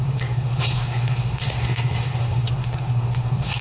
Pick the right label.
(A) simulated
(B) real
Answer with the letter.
A